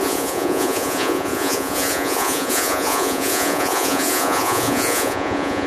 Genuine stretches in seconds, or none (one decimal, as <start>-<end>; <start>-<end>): none